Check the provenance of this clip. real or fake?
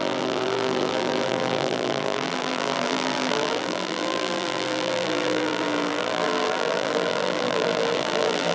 fake